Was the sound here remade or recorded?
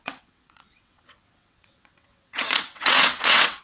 remade